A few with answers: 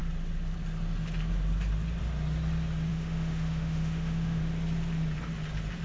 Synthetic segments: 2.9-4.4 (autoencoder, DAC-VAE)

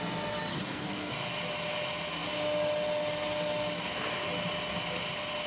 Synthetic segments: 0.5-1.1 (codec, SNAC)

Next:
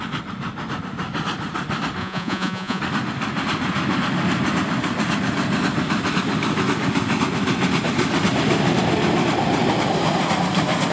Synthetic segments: 2.0-2.8 (vocoder, Vocos)

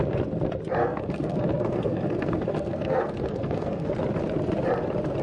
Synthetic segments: 0.8-3.9 (codec, SNAC)

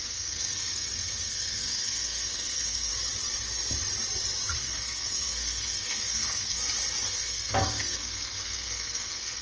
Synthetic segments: 0.0-2.9 (codec, SNAC); 4.6-6.6; 7.1-9.4

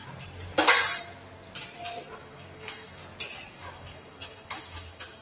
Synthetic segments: 2.2-3.0 (autoencoder, DAC-VAE); 3.5-5.2